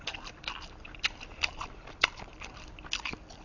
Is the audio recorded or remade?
recorded